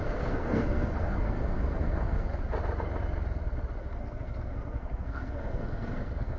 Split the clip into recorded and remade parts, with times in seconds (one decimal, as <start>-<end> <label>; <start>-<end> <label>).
0.0-2.3 remade; 2.3-3.8 recorded; 3.8-6.4 remade